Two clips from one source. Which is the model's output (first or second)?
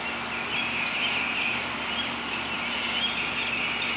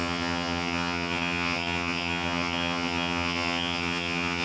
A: second